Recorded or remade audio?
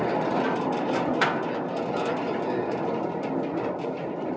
recorded